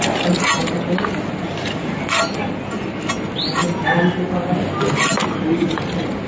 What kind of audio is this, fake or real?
real